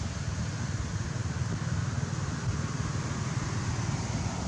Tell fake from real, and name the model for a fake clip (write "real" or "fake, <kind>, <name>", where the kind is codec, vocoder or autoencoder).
real